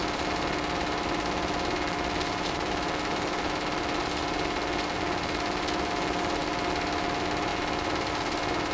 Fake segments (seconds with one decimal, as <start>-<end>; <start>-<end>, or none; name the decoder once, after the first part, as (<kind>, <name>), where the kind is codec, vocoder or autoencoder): none